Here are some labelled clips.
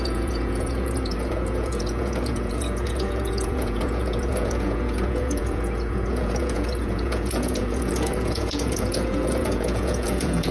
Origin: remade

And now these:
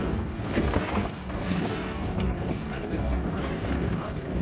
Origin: remade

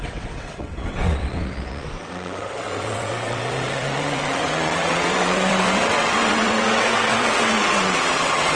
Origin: remade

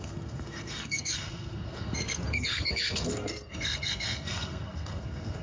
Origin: remade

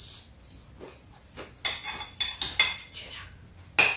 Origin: recorded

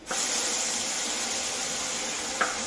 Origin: recorded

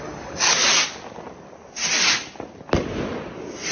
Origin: recorded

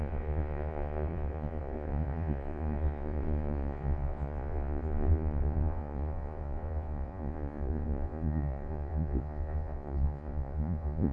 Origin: remade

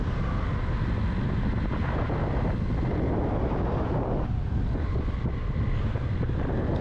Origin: recorded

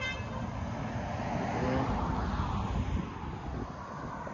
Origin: recorded